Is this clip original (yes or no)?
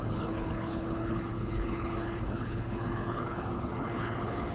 no